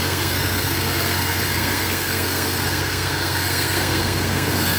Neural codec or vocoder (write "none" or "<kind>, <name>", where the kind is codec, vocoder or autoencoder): codec, SNAC